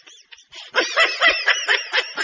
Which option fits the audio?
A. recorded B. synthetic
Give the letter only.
B